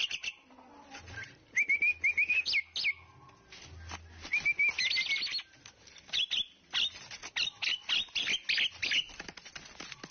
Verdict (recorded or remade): recorded